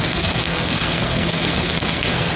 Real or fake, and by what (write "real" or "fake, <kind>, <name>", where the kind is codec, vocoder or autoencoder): fake, codec, SNAC